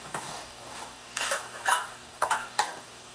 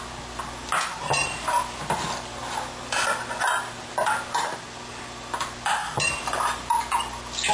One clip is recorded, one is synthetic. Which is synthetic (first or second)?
first